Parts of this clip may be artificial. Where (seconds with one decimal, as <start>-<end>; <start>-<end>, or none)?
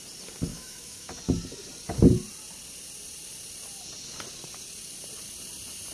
0.5-1.1